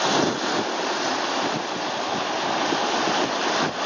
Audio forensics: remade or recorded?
recorded